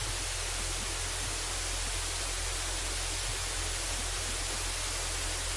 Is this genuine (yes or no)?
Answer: yes